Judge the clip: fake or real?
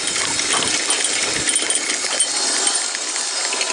real